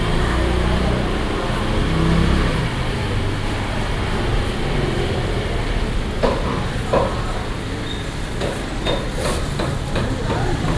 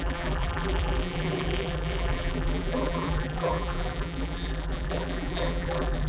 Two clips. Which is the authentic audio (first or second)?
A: first